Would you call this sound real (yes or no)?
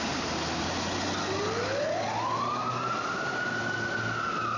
yes